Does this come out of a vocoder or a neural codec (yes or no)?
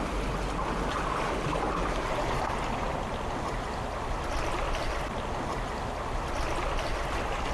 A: no